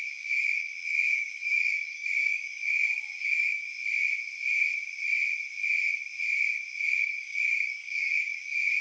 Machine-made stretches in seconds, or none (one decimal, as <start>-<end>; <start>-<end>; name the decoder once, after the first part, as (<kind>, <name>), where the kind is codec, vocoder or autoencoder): 0.0-3.7 (codec, DAC); 6.9-8.8